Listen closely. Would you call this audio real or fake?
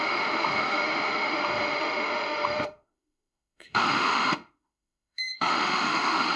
fake